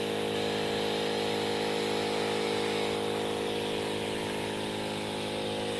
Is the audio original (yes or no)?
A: yes